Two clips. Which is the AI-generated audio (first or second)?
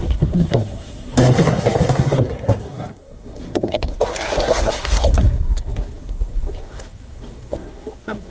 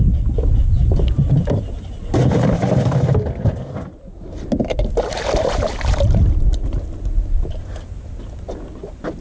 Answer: first